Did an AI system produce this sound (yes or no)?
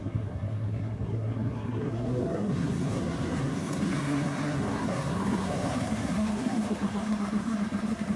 yes